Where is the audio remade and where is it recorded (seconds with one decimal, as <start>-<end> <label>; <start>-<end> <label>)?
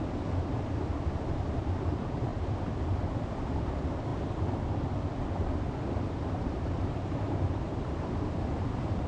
0.0-9.1 remade